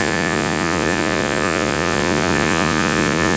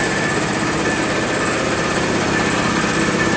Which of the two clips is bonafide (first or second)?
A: second